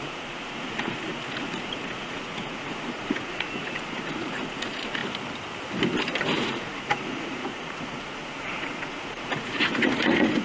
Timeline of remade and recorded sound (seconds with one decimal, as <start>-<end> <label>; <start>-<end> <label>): 0.0-5.0 remade; 5.0-6.4 recorded; 6.4-10.4 remade